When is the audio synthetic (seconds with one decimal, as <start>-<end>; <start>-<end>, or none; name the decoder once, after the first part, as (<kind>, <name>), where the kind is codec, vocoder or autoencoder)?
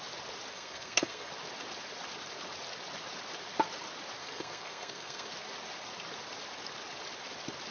0.5-1.3 (codec, SNAC); 4.2-5.3